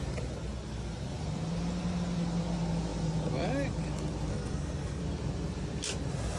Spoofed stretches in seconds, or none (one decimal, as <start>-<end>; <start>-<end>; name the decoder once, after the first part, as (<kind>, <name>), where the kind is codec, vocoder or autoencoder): 4.3-5.0 (codec, SNAC)